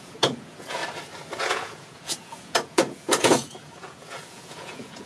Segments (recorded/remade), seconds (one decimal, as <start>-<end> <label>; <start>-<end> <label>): 0.0-0.8 remade; 0.8-1.4 recorded; 1.4-5.1 remade